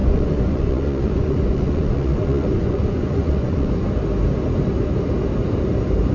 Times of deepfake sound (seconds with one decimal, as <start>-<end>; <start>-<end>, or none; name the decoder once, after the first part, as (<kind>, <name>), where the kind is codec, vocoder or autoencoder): 0.0-3.7 (vocoder, Vocos)